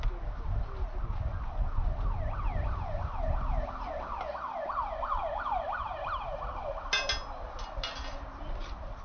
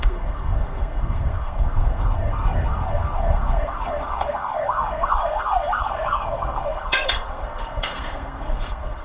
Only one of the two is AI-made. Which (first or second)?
second